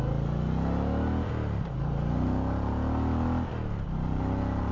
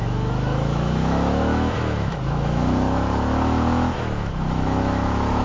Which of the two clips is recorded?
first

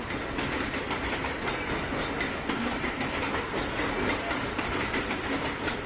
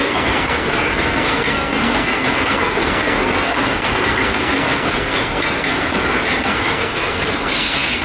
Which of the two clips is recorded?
first